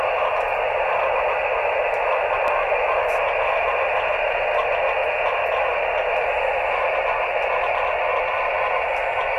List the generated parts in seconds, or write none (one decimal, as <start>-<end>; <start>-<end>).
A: none